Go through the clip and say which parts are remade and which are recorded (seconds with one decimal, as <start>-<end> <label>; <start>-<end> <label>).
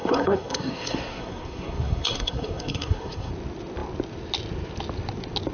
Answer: 0.0-3.3 remade; 3.3-5.5 recorded